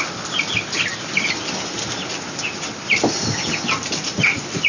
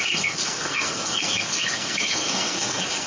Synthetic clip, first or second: second